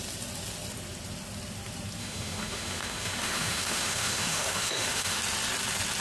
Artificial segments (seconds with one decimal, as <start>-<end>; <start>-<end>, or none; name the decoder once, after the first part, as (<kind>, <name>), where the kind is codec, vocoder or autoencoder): 2.0-5.2 (autoencoder, DAC-VAE)